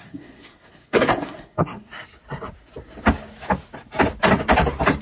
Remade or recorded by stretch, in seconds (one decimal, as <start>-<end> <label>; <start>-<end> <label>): 0.0-1.9 remade; 1.9-5.0 recorded